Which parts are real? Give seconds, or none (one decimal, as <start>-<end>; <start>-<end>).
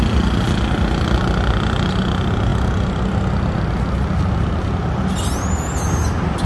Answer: 0.0-6.5